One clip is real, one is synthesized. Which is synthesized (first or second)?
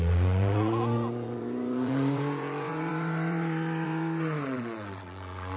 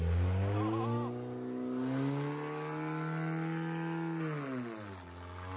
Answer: first